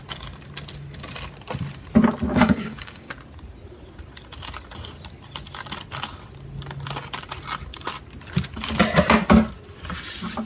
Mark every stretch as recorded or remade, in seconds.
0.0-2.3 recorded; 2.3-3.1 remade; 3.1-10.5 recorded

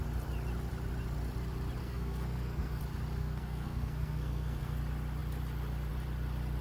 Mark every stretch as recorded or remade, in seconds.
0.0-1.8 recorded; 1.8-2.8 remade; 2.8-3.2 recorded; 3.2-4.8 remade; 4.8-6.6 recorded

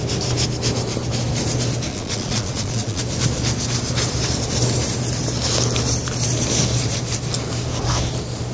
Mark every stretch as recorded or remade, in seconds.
0.0-1.9 recorded; 1.9-3.0 remade; 3.0-8.5 recorded